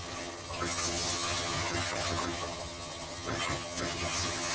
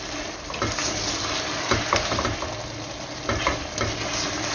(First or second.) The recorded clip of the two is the second